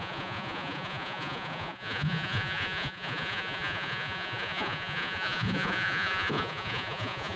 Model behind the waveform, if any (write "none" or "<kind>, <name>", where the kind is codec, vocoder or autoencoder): vocoder, Vocos